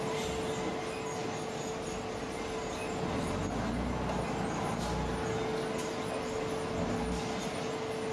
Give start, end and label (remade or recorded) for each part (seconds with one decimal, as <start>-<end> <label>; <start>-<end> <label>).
0.0-8.1 recorded